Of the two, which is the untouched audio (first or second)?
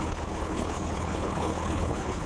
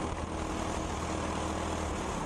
second